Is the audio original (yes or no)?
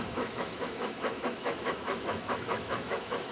no